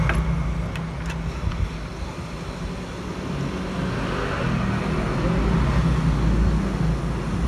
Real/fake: real